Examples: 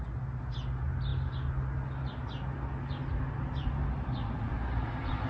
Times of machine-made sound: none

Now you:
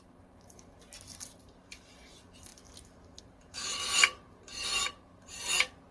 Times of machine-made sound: 0.0-0.9 (vocoder, BigVGAN v2); 1.4-2.5; 3.2-5.3

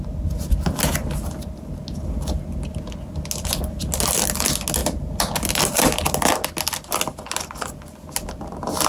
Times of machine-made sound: none

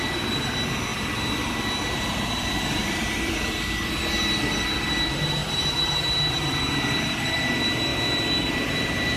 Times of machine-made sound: 0.9-4.0 (vocoder, BigVGAN v2); 5.4-7.5; 7.9-9.2